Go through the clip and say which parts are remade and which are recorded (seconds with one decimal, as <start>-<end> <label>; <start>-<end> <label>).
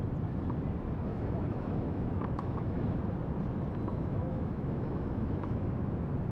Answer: 0.0-1.1 recorded; 1.1-3.0 remade; 3.0-3.9 recorded; 3.9-5.7 remade; 5.7-6.3 recorded